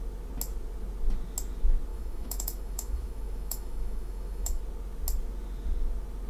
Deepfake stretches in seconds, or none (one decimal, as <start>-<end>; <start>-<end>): 1.9-4.6